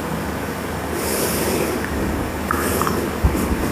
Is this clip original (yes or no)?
no